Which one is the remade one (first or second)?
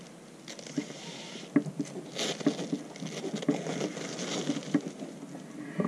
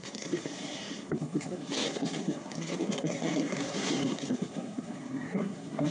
second